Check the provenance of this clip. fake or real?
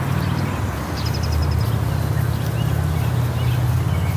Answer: real